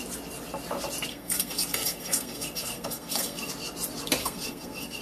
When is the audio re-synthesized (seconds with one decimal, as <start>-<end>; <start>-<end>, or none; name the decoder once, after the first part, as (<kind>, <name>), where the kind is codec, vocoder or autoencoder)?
1.1-3.5 (codec, SNAC); 4.2-5.0